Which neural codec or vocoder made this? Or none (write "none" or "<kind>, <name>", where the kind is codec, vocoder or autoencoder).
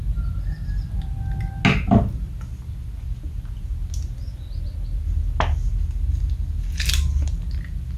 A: none